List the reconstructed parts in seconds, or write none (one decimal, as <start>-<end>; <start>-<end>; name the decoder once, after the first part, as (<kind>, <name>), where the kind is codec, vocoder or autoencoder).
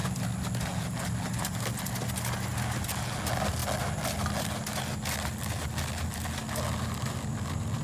none